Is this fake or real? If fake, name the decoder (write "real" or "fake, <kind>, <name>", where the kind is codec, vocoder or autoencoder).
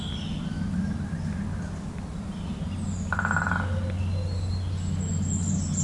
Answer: real